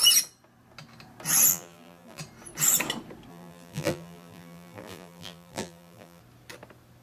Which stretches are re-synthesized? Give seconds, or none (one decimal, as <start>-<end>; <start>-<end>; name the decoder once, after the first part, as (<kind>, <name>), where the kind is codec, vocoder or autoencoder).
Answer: 1.5-2.2 (vocoder, BigVGAN v2); 3.3-6.2